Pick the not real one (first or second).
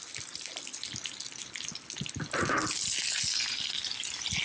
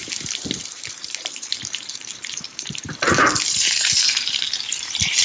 second